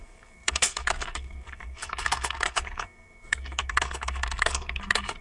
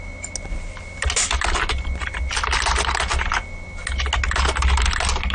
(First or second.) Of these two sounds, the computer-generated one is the first